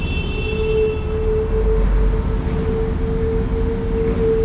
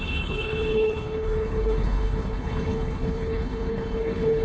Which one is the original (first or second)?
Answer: first